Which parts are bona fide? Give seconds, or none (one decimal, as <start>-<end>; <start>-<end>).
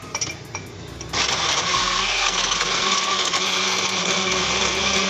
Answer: 0.0-1.6